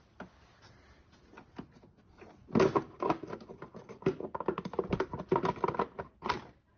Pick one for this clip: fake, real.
real